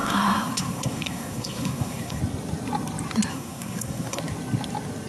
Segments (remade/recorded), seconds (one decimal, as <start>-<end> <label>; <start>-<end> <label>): 0.0-2.2 remade; 2.2-3.3 recorded; 3.3-4.2 remade; 4.2-5.1 recorded